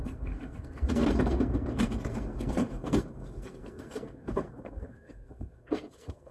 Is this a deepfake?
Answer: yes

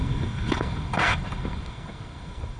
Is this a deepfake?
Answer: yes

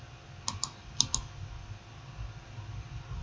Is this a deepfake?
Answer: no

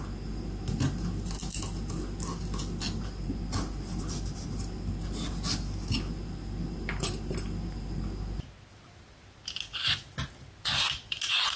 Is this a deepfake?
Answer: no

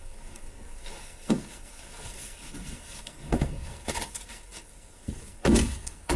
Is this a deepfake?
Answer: yes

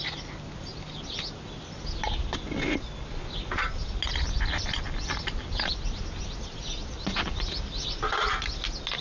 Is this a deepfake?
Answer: no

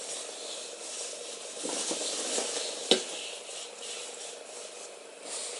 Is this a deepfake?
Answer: no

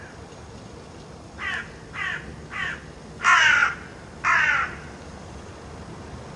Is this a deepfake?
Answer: no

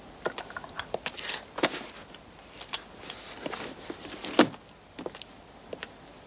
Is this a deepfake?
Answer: no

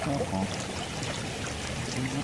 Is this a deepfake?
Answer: no